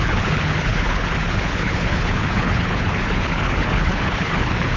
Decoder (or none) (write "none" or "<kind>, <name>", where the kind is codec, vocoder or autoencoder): codec, HILCodec